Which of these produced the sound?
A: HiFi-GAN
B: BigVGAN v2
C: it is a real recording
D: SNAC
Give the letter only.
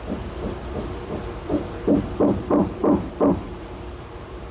B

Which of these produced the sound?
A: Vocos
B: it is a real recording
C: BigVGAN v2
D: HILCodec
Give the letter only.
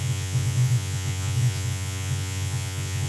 A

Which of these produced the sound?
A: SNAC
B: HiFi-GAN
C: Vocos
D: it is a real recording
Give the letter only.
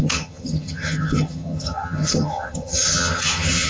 B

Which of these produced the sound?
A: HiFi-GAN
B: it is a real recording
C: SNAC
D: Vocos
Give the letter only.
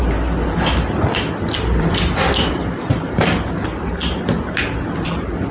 B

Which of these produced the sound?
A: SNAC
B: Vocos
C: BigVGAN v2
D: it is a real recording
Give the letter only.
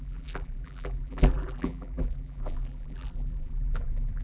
C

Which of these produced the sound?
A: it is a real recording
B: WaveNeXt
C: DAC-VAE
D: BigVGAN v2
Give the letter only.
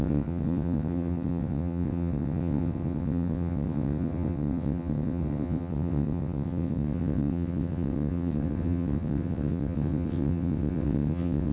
B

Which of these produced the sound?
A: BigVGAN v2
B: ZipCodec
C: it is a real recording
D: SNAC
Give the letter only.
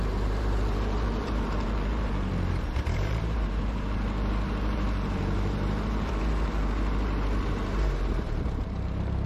A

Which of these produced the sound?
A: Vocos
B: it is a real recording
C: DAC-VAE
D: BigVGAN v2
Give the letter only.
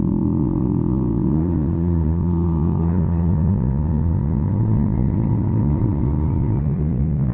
A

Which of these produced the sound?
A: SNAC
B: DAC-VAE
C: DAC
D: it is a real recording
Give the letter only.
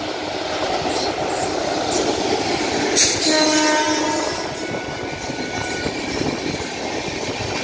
D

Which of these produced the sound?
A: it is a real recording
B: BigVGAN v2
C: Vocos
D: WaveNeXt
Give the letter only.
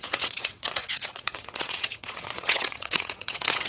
D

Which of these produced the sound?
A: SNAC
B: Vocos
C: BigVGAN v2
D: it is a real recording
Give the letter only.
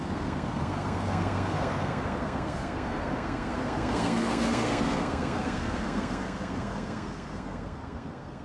A